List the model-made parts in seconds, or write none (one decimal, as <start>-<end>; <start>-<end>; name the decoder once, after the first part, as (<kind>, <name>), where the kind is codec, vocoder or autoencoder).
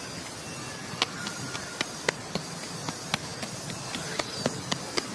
none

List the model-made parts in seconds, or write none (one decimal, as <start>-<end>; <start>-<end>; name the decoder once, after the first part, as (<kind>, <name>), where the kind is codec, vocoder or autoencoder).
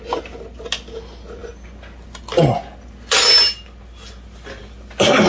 none